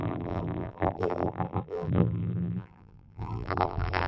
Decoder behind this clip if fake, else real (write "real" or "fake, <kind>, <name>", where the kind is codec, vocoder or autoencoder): fake, vocoder, BigVGAN v2